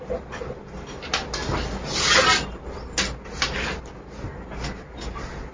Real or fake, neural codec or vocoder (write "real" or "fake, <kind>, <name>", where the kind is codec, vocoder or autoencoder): real